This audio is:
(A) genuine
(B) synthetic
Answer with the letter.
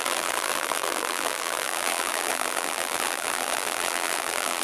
B